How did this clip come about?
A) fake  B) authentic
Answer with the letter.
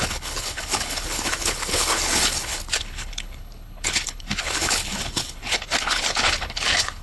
A